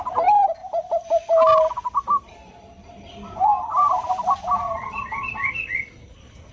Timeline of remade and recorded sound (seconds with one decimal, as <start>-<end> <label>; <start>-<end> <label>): 0.0-6.5 recorded